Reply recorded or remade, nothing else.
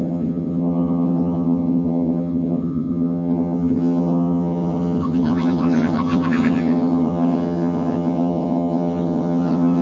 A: remade